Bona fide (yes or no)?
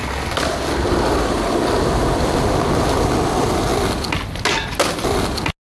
yes